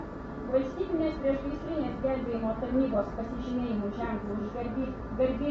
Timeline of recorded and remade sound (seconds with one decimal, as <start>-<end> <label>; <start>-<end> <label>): 0.0-4.4 recorded; 4.4-5.0 remade; 5.0-5.5 recorded